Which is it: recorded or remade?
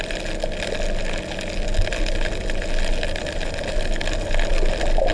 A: recorded